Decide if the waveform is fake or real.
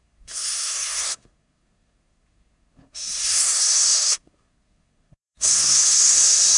fake